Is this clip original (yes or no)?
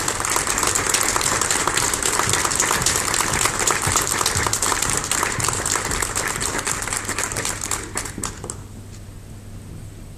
yes